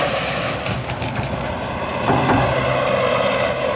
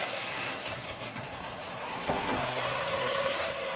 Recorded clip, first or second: first